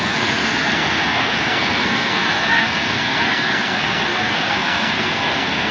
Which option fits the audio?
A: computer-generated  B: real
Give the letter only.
A